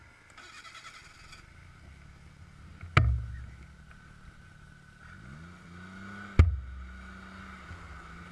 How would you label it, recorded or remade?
recorded